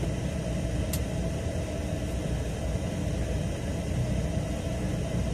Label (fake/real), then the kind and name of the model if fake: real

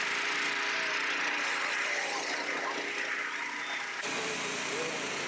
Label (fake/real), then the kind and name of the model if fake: real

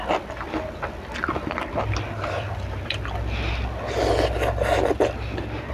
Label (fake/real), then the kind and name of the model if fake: real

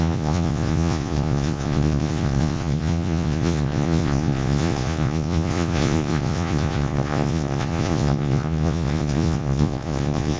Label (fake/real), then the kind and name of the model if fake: fake, vocoder, Vocos